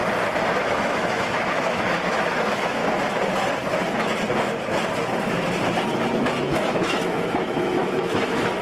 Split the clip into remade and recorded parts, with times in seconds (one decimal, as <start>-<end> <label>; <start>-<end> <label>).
0.0-0.6 recorded; 0.6-2.8 remade; 2.8-6.2 recorded; 6.2-8.6 remade